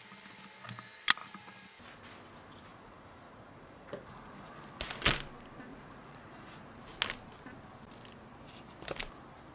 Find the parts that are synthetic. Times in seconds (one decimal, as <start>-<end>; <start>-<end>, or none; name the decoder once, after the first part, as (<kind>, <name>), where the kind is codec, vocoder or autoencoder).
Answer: 2.7-4.5 (vocoder, Vocos); 5.7-6.6